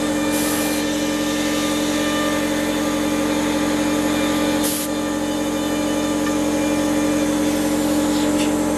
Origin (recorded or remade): recorded